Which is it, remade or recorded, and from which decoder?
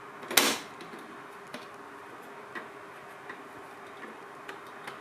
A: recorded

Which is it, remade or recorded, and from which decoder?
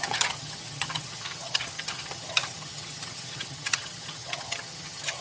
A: remade, vocoder, HiFi-GAN